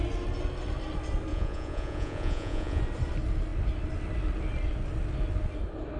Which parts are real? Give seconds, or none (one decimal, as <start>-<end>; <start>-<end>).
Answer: 0.0-1.3; 2.8-6.0